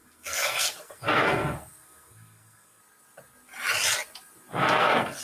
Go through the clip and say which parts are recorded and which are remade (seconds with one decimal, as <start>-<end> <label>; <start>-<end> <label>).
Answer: 0.0-2.8 remade; 2.8-4.5 recorded; 4.5-5.2 remade